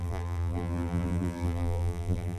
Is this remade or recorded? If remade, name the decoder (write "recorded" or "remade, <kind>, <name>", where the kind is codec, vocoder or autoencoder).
remade, vocoder, BigVGAN v2